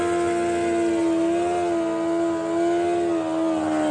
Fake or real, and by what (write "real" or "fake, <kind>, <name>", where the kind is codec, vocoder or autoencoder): real